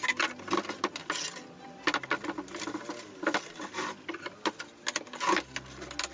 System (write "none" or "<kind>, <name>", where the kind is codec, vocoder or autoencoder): none